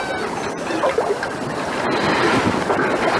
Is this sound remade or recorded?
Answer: recorded